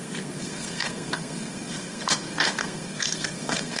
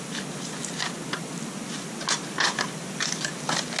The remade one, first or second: first